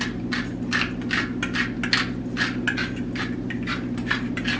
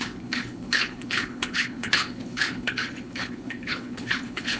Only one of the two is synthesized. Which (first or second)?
second